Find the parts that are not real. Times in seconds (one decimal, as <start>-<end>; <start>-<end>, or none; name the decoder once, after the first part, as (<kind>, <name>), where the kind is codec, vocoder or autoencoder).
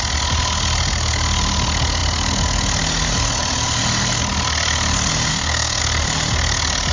5.3-5.8 (codec, SNAC)